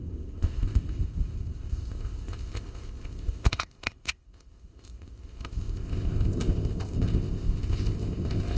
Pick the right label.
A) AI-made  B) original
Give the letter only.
A